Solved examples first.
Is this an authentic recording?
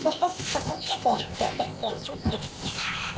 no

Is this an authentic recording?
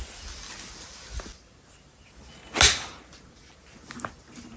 yes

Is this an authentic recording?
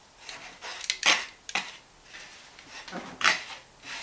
yes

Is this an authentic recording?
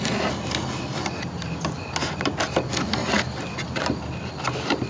yes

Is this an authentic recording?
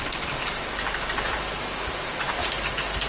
yes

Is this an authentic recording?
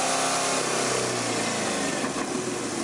yes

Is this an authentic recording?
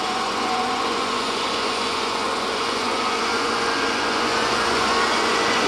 no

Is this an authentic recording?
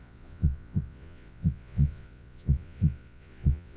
no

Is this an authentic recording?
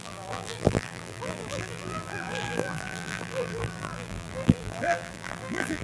no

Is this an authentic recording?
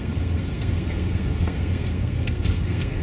no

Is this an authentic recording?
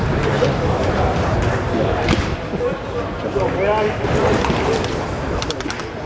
yes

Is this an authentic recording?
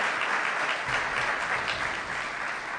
yes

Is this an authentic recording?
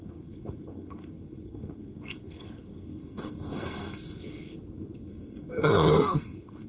no